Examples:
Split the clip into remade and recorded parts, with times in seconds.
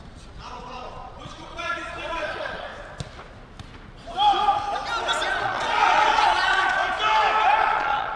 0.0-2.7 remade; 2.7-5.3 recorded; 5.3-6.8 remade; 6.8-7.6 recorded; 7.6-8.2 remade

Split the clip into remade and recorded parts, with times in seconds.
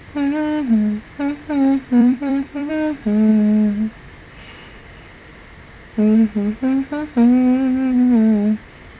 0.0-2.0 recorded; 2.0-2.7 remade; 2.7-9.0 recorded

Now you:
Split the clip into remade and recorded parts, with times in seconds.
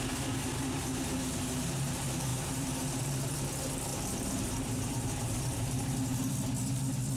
0.0-2.3 recorded; 2.3-3.0 remade; 3.0-3.9 recorded; 3.9-6.3 remade; 6.3-7.2 recorded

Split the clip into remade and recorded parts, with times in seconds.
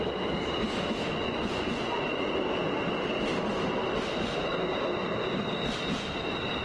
0.0-1.1 recorded; 1.1-2.3 remade; 2.3-6.6 recorded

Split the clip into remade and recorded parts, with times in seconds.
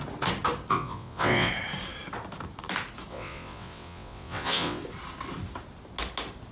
0.0-0.7 recorded; 0.7-1.5 remade; 1.5-3.1 recorded; 3.1-4.8 remade; 4.8-6.5 recorded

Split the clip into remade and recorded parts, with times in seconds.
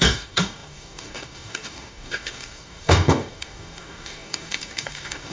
0.0-5.3 remade